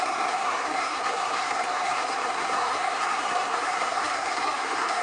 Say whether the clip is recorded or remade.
remade